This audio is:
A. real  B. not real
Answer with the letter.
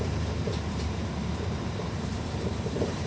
B